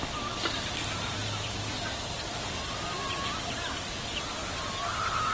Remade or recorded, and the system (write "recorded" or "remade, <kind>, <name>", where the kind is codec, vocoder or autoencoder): recorded